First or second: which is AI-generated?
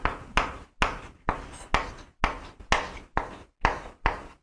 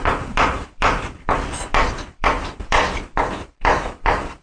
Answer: second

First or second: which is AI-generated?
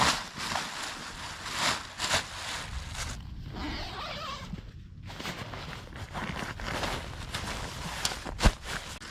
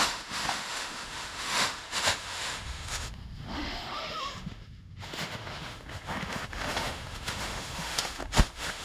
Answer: second